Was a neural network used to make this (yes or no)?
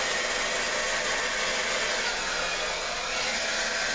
no